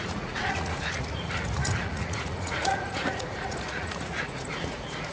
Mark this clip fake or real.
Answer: fake